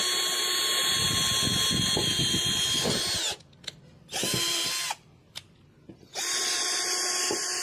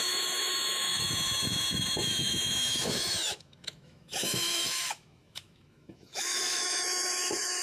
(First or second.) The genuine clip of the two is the first